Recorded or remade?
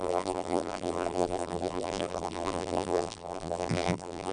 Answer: remade